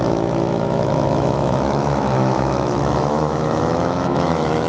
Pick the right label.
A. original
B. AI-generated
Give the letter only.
B